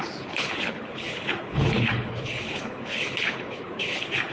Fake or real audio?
fake